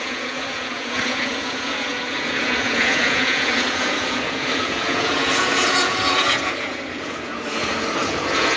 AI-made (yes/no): yes